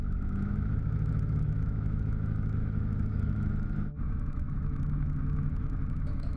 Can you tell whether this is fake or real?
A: fake